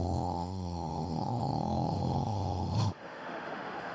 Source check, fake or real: fake